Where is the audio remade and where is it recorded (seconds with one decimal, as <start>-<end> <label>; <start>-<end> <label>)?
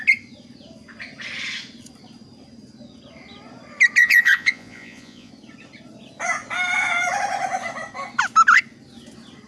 0.0-4.0 recorded; 4.0-5.3 remade; 5.3-9.5 recorded